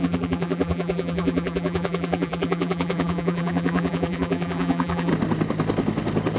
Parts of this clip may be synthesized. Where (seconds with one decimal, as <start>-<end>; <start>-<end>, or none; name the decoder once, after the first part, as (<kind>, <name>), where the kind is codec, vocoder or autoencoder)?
0.0-5.1 (vocoder, BigVGAN v2)